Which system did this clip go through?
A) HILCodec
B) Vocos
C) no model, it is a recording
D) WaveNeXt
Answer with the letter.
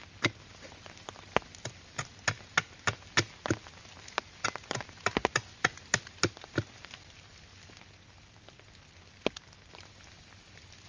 C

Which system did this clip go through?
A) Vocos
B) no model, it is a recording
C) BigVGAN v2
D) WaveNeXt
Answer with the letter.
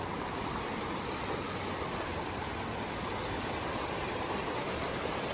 B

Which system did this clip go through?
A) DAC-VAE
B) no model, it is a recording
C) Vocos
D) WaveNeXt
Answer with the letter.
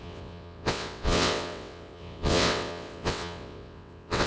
D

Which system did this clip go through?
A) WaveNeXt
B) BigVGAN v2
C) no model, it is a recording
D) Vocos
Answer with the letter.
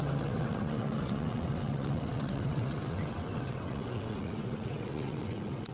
A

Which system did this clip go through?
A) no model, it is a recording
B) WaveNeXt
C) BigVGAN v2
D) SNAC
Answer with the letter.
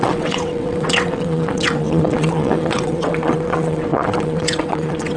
B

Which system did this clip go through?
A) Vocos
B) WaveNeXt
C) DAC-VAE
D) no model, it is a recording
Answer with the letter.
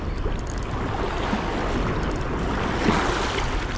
D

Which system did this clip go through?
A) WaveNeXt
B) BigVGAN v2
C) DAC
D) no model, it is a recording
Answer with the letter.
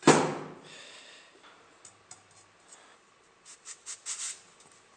D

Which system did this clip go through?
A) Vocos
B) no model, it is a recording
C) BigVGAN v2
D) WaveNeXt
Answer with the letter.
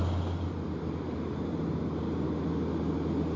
B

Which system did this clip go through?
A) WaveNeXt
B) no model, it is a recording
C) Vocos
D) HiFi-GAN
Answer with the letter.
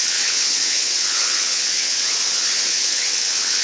A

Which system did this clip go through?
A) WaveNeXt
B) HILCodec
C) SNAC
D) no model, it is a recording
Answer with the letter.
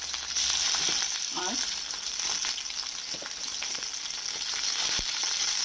D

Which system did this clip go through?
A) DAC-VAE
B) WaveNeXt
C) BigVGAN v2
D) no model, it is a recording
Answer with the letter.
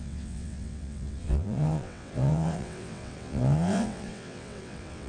B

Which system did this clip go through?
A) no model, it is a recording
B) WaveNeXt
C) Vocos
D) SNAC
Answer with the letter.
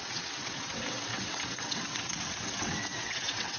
B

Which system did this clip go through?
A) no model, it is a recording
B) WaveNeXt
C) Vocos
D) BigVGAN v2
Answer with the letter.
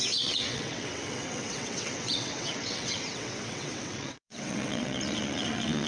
B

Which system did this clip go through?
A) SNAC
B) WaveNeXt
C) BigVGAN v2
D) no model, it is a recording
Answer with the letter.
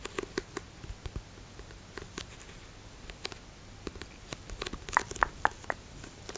D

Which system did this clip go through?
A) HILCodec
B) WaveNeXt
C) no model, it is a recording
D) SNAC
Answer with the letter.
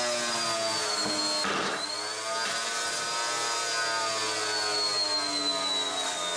C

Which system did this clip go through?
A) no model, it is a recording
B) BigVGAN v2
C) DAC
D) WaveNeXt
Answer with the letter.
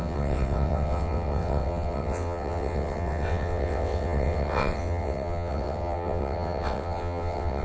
D